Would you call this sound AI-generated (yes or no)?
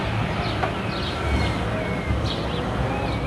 no